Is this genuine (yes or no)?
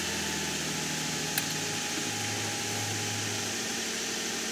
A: yes